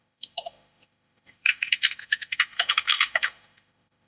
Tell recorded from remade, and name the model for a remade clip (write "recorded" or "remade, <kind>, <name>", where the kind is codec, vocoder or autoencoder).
remade, autoencoder, DAC-VAE